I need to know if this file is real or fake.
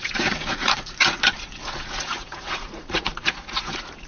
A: fake